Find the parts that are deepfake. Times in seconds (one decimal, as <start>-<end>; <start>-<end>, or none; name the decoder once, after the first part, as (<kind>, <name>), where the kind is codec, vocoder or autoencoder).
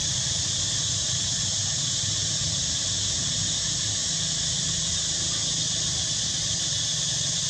none